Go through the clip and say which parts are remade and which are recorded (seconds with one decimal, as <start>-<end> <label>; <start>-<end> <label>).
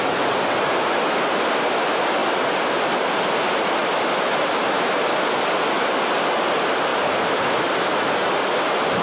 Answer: 0.0-2.2 recorded; 2.2-3.3 remade; 3.3-3.8 recorded; 3.8-4.5 remade; 4.5-6.9 recorded; 6.9-8.2 remade; 8.2-9.0 recorded